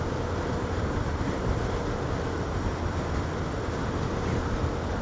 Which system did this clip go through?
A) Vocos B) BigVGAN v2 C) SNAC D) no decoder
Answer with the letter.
D